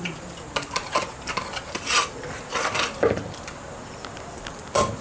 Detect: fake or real real